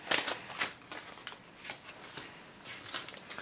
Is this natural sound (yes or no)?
yes